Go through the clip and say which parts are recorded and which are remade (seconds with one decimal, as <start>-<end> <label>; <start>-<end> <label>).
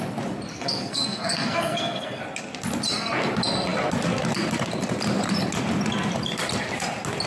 0.0-0.5 recorded; 0.5-2.2 remade; 2.2-7.3 recorded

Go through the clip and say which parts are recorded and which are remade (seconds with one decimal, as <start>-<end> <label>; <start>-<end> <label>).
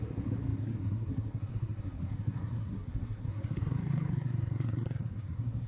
0.0-5.7 remade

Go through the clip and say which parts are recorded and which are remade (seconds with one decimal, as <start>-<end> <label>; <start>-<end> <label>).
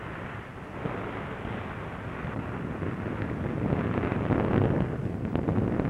0.0-5.0 recorded; 5.0-5.5 remade; 5.5-5.9 recorded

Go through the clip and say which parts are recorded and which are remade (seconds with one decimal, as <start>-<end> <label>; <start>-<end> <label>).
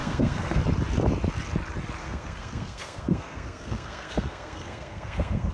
0.0-0.6 remade; 0.6-2.0 recorded; 2.0-5.5 remade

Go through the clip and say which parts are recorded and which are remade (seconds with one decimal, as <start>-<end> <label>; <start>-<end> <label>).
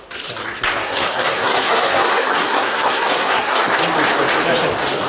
0.0-0.8 recorded; 0.8-3.7 remade; 3.7-5.1 recorded